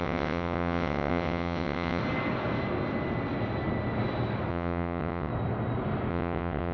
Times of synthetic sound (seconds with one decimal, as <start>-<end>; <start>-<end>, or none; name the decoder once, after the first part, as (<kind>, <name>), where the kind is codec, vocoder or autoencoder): 0.0-2.0 (vocoder, WaveNeXt); 4.5-5.3; 6.1-6.7